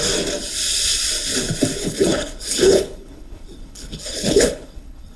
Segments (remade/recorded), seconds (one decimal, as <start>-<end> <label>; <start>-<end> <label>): 0.0-1.8 recorded; 1.8-5.2 remade